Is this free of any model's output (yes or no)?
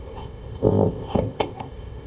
no